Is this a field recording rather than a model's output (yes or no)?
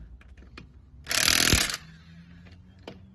yes